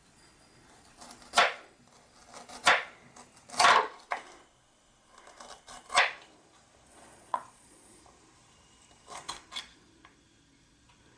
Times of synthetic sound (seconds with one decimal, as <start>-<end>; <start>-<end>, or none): 6.9-8.0